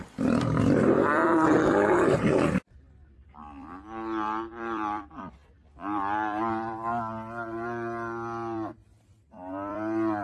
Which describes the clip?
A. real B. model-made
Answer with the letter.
B